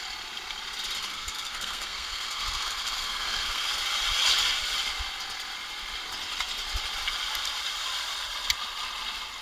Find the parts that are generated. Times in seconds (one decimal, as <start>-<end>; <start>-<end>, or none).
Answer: 1.1-3.8